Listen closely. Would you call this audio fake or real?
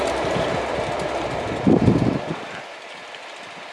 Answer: real